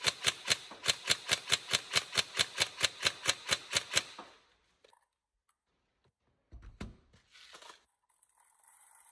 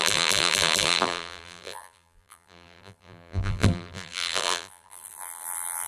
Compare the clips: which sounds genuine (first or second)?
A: first